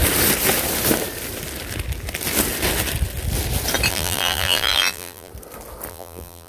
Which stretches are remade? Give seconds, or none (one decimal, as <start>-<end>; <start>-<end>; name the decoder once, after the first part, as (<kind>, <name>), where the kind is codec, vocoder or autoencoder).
3.9-5.3 (vocoder, BigVGAN v2); 5.9-6.5